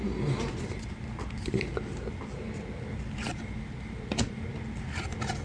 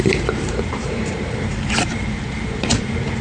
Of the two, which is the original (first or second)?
first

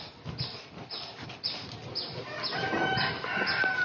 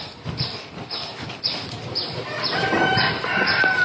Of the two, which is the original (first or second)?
first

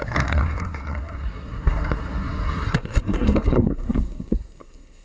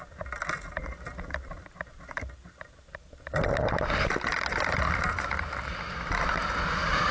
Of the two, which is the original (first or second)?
second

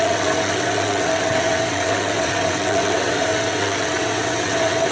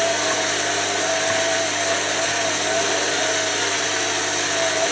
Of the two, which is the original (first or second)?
second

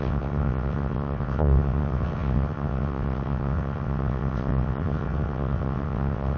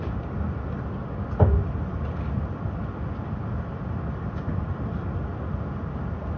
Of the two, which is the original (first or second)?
second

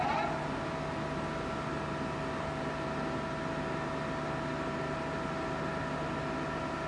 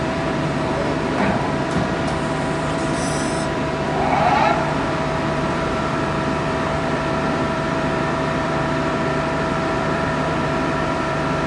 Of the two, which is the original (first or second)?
first